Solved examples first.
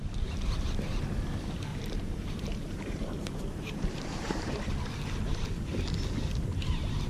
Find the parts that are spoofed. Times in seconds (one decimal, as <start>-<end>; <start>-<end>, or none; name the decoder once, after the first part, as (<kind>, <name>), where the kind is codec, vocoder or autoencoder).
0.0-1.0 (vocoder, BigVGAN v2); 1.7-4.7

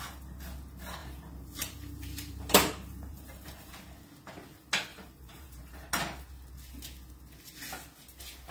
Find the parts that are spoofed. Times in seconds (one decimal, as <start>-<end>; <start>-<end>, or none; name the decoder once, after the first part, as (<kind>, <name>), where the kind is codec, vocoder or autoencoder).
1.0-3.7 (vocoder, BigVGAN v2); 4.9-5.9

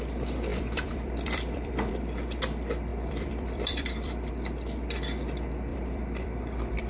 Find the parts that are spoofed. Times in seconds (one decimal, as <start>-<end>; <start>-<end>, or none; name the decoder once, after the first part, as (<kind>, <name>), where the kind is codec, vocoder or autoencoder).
0.5-1.9 (vocoder, BigVGAN v2); 2.9-4.3; 5.7-6.4

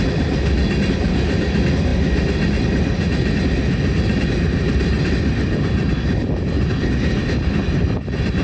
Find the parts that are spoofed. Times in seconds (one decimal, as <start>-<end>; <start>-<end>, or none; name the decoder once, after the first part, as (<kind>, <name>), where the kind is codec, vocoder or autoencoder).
none

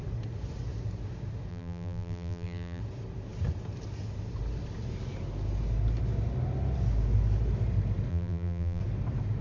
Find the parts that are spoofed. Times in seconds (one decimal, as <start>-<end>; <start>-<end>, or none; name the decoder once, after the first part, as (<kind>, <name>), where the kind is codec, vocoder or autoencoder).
1.5-2.8 (vocoder, BigVGAN v2); 8.1-8.8

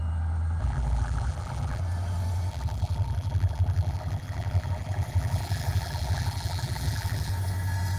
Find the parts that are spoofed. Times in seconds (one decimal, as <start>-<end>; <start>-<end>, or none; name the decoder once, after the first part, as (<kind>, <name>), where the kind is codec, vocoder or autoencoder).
0.6-1.8 (vocoder, BigVGAN v2); 2.5-7.3

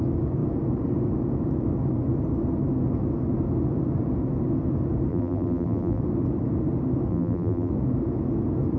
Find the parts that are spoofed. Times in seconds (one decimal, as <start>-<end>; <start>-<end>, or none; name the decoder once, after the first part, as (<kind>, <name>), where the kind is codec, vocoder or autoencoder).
5.1-6.0 (vocoder, BigVGAN v2); 7.1-7.7